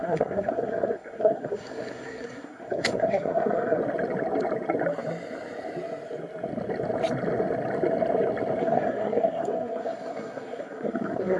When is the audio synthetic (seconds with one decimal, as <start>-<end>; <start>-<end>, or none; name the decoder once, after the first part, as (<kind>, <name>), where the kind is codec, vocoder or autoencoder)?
0.0-3.8 (codec, SNAC); 8.6-11.4

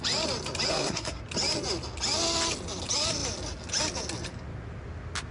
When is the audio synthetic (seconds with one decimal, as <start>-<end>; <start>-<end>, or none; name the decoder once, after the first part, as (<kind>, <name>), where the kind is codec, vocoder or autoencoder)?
0.7-1.2 (codec, SNAC)

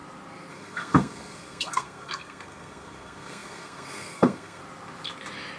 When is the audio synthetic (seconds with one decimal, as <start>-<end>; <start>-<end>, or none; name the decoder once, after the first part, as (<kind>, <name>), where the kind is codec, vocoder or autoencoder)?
0.5-4.6 (codec, SNAC)

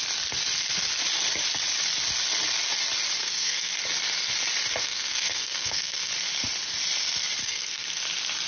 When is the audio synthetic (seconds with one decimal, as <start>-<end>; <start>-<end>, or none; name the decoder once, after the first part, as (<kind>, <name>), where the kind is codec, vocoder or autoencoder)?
3.2-3.7 (codec, SNAC); 4.8-6.1; 7.4-8.0

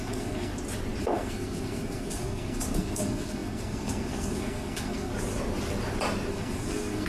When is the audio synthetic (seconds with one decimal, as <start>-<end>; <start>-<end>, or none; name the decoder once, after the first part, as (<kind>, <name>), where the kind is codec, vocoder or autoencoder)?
0.0-0.5 (codec, SNAC); 1.0-5.1; 6.3-7.1

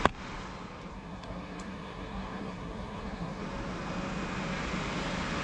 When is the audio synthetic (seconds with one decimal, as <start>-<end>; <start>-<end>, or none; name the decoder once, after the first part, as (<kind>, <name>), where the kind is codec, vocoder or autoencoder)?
0.9-3.4 (codec, SNAC)

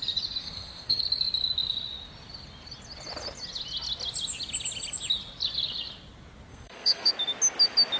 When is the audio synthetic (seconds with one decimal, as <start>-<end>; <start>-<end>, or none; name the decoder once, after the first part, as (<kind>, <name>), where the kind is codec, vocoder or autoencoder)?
0.4-1.0 (codec, SNAC); 6.5-7.1

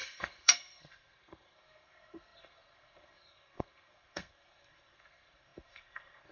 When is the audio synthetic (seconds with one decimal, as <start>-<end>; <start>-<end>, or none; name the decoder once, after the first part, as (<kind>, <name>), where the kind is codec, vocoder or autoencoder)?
0.0-6.3 (codec, SNAC)